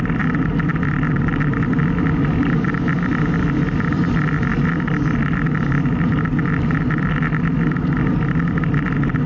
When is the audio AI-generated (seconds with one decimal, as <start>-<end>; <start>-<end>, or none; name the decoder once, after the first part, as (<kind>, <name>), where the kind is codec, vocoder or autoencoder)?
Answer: none